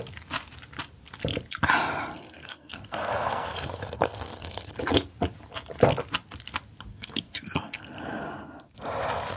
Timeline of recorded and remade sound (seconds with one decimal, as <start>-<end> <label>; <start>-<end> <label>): 0.0-2.4 recorded; 2.4-4.7 remade; 4.7-6.9 recorded; 6.9-7.8 remade; 7.8-9.4 recorded